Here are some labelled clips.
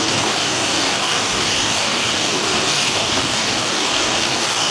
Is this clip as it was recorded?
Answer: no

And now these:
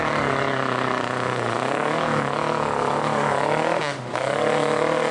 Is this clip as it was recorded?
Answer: no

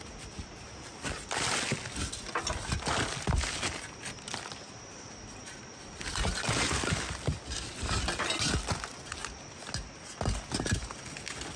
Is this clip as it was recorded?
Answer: yes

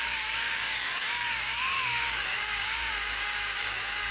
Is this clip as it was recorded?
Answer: no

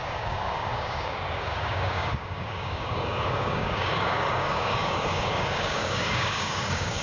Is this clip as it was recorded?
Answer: no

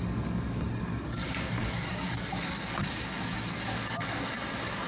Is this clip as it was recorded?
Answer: no